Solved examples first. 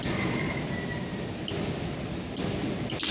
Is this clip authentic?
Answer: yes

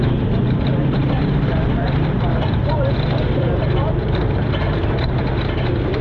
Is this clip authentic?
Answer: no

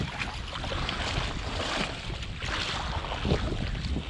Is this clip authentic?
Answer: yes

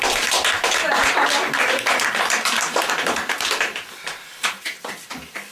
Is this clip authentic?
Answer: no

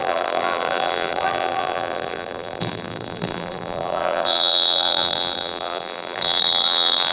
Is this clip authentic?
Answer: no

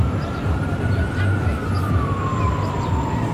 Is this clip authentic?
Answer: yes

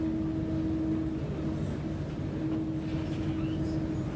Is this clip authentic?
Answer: yes